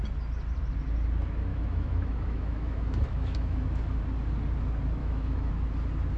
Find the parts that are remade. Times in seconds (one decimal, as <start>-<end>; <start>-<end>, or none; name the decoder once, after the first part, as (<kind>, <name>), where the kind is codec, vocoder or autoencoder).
1.5-4.0 (autoencoder, DAC-VAE); 5.0-5.5